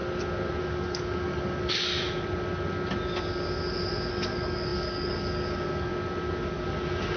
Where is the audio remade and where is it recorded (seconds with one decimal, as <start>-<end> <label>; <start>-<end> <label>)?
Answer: 0.0-0.6 recorded; 0.6-1.9 remade; 1.9-4.1 recorded; 4.1-5.9 remade; 5.9-6.4 recorded; 6.4-7.2 remade